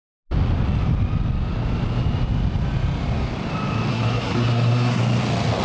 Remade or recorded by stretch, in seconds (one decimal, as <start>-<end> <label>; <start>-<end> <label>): 0.0-3.9 recorded; 3.9-5.0 remade; 5.0-5.6 recorded